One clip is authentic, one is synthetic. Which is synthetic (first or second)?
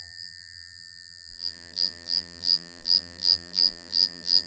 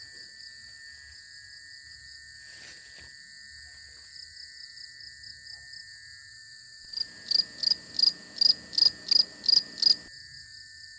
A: first